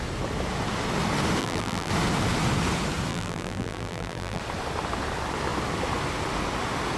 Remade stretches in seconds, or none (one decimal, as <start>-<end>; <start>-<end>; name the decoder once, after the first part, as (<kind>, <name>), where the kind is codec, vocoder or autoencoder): 1.4-1.9 (vocoder, BigVGAN v2); 3.1-4.4